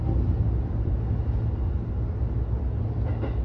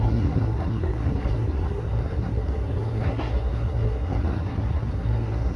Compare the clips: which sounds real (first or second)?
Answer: first